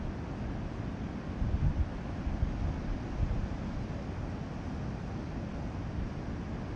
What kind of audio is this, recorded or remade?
recorded